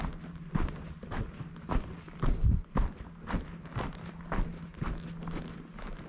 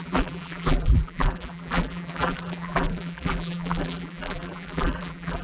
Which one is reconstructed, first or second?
second